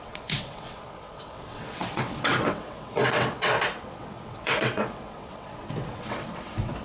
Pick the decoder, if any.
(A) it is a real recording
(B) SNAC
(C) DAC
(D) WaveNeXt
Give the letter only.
D